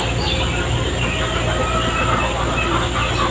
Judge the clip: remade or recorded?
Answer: recorded